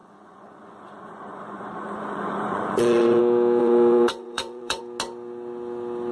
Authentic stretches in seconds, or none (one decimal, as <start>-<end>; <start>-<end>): 3.2-3.6; 4.8-6.1